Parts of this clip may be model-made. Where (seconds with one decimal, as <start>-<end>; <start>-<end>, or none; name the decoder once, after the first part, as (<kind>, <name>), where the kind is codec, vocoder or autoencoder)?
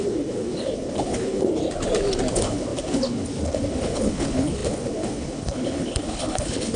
0.0-1.6 (codec, HILCodec); 2.3-6.8